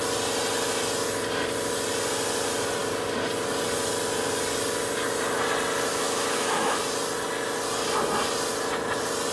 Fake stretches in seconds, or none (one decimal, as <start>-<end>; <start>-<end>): 5.9-6.8